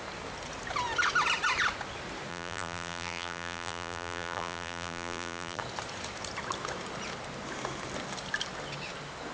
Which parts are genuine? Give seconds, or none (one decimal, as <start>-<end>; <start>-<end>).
0.0-2.3; 5.6-9.3